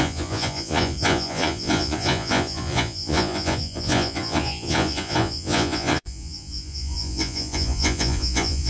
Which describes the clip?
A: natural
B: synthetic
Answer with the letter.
B